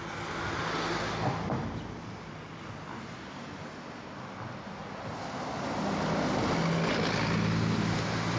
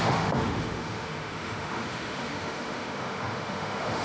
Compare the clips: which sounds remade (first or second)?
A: second